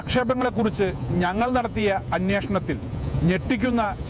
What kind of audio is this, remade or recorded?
remade